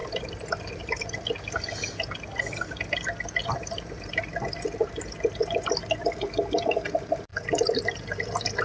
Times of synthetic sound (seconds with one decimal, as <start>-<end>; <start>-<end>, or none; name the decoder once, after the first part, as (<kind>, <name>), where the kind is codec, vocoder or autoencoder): 0.0-1.0 (vocoder, BigVGAN v2); 3.4-4.2; 7.3-7.8